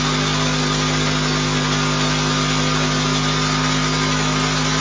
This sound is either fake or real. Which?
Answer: real